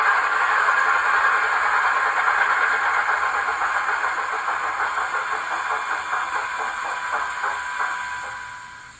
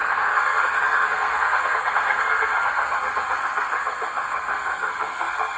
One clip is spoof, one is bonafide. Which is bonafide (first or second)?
first